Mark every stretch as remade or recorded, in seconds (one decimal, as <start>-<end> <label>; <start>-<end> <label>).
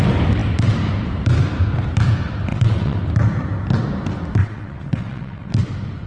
0.0-2.5 recorded; 2.5-3.0 remade; 3.0-4.4 recorded; 4.4-5.5 remade; 5.5-6.1 recorded